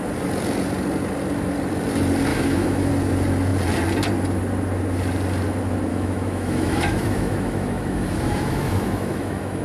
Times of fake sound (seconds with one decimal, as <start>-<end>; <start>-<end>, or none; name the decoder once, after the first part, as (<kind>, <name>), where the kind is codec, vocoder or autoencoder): 2.3-2.9 (autoencoder, DAC-VAE); 5.9-9.6